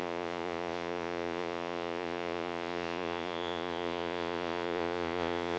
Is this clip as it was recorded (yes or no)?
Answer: no